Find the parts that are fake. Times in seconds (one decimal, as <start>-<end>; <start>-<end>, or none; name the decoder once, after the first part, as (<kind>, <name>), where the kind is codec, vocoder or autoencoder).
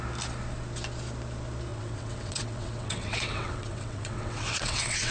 1.7-5.1 (vocoder, WaveNeXt)